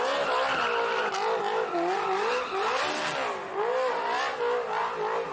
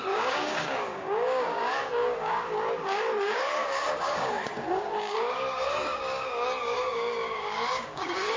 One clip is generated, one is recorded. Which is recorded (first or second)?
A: first